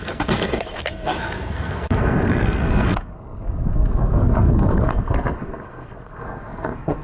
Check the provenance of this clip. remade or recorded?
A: remade